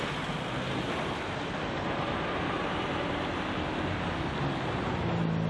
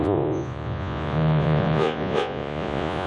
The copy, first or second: second